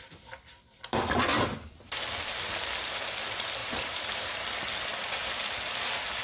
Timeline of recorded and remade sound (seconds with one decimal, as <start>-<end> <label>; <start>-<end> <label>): 0.0-1.3 recorded; 1.3-2.0 remade; 2.0-3.6 recorded; 3.6-4.4 remade; 4.4-6.2 recorded